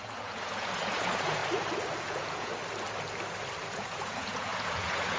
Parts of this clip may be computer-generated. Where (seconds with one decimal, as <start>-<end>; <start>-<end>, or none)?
0.0-1.4; 2.0-2.5; 3.7-5.2